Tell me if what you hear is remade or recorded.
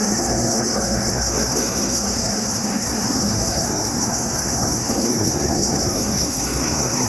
remade